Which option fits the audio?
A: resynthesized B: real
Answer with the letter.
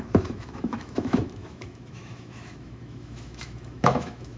A